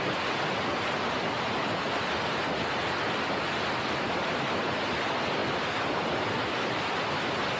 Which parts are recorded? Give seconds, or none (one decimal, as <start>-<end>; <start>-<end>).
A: 0.0-7.6